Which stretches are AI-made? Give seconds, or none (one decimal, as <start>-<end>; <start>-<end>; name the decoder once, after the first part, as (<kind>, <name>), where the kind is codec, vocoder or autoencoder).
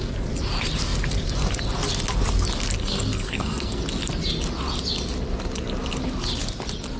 2.8-3.8 (codec, SNAC)